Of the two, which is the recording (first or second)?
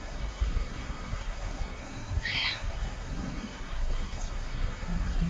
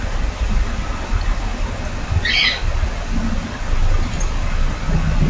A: second